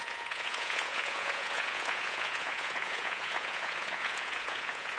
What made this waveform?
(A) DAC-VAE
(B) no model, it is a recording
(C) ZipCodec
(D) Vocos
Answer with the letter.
D